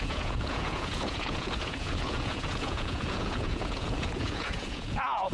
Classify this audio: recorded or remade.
remade